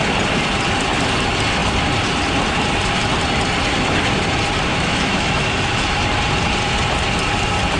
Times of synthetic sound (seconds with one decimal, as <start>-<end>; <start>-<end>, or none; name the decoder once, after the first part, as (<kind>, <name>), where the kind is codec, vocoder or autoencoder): 4.7-5.9 (autoencoder, DAC-VAE)

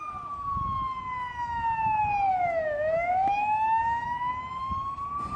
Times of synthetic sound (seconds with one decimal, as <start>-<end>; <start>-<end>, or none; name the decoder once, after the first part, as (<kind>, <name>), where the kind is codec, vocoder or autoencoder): 2.3-4.3 (autoencoder, DAC-VAE)

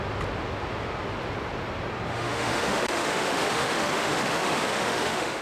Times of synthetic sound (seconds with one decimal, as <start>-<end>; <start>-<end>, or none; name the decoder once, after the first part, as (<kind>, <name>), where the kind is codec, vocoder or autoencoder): 2.1-5.4 (autoencoder, DAC-VAE)

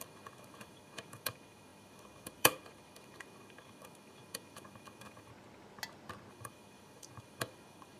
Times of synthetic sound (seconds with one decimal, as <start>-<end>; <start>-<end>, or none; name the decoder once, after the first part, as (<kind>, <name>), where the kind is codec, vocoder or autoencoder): 0.0-5.3 (autoencoder, DAC-VAE); 6.3-8.0

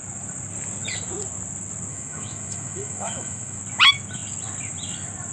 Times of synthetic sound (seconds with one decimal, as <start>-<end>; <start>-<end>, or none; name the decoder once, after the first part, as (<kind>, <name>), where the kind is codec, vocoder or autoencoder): 1.9-3.6 (autoencoder, DAC-VAE)

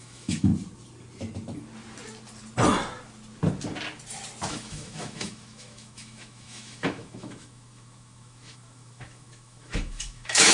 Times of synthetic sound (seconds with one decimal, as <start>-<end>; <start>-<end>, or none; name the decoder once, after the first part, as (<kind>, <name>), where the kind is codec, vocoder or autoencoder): 0.0-0.5 (autoencoder, DAC-VAE); 4.5-10.5